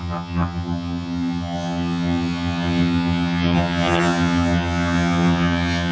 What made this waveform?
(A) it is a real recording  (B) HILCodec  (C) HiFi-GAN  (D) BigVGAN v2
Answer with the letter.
C